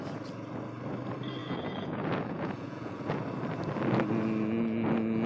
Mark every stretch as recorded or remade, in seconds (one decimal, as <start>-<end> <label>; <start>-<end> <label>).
0.0-1.4 recorded; 1.4-3.2 remade; 3.2-5.3 recorded